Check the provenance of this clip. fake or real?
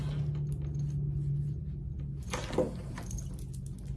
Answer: real